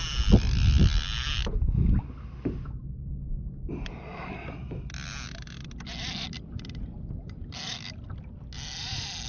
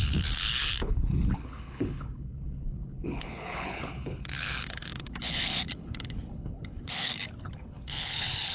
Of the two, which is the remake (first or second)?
second